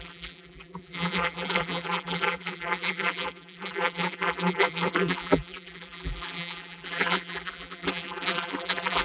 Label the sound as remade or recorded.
remade